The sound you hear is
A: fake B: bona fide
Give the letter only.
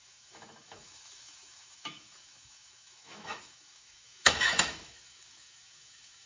A